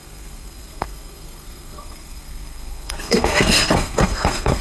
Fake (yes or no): yes